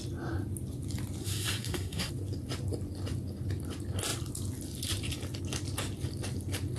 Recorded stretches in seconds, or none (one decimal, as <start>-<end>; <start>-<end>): 0.0-1.2; 2.1-6.8